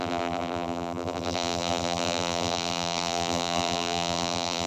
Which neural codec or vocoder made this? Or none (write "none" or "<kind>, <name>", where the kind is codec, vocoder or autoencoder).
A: vocoder, BigVGAN v2